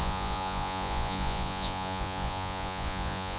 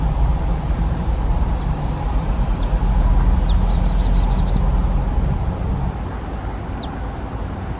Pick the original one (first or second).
second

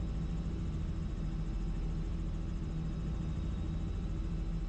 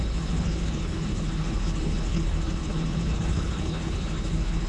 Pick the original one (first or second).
first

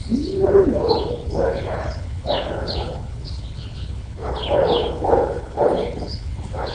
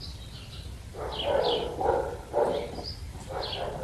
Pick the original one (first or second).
second